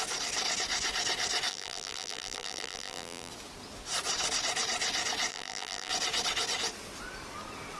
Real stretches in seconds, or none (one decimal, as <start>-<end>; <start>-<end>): 0.0-1.5; 3.3-5.3; 5.9-7.8

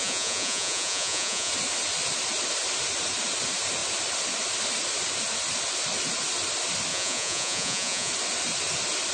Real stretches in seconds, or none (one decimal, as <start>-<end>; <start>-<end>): 1.5-6.9; 8.1-9.1

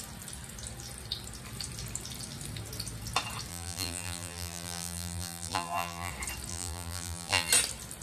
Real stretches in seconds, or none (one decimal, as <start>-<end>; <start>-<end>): 0.0-3.5; 6.1-6.5; 7.5-8.0

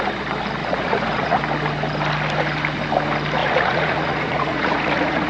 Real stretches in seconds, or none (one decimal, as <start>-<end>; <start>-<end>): 0.0-0.6; 1.4-3.4

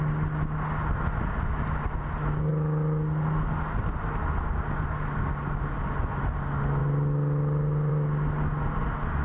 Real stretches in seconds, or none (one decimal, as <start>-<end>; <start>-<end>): 0.0-9.2

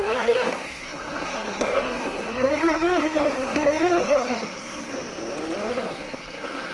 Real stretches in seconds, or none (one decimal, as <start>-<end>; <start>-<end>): 4.9-5.7

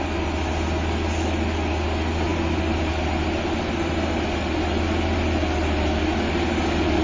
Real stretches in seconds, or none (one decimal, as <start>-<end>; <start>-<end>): 0.0-7.0

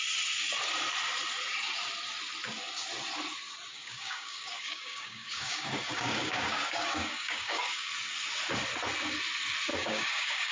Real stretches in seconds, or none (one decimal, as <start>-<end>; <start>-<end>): 0.0-3.7; 7.9-9.7